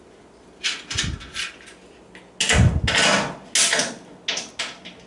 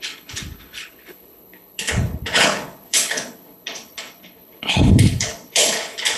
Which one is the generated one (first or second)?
second